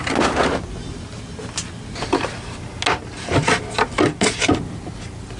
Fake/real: real